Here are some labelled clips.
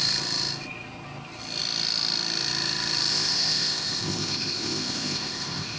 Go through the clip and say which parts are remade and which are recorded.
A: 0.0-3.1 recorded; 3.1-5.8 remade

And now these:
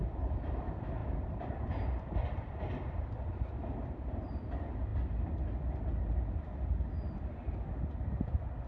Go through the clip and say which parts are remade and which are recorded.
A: 0.0-8.7 recorded

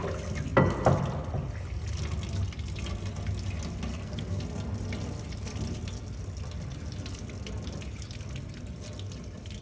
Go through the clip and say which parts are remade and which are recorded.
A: 0.0-3.9 recorded; 3.9-4.4 remade; 4.4-9.6 recorded

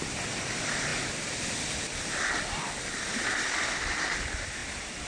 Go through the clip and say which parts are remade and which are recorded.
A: 0.0-5.1 recorded